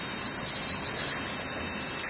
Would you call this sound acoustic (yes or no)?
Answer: yes